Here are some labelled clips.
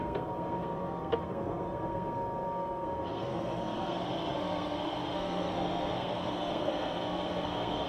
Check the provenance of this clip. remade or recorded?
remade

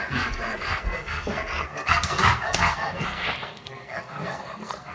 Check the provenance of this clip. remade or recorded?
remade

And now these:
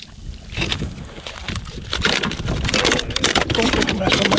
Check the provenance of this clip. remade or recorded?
recorded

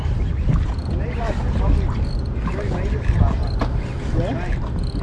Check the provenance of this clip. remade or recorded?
recorded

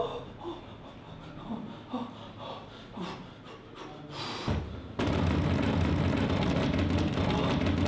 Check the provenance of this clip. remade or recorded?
recorded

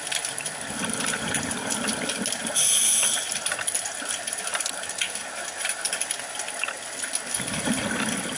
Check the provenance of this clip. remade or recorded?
recorded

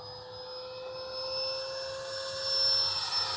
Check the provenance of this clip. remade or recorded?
recorded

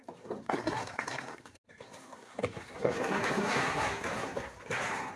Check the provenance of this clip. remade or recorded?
remade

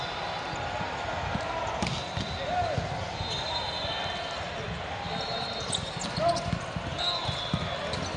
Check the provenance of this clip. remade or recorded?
recorded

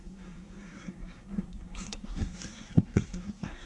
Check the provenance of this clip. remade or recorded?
remade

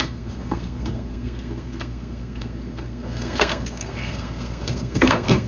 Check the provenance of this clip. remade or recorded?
remade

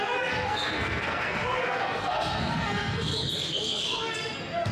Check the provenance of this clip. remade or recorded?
remade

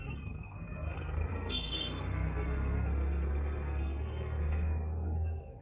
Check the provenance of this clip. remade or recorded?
remade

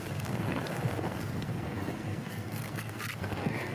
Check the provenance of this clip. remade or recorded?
remade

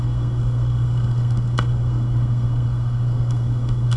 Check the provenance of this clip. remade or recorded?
remade